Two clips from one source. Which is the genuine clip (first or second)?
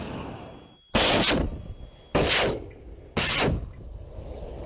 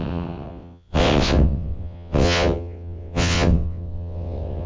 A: first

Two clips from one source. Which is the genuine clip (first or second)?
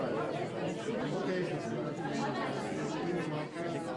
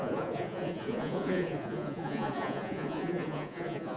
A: first